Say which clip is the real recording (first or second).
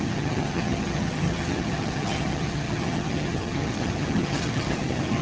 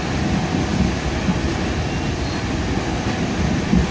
second